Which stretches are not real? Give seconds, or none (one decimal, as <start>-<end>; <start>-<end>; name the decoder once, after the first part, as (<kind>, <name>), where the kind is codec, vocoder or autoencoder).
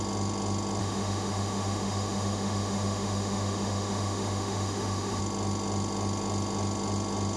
0.8-5.2 (autoencoder, DAC-VAE)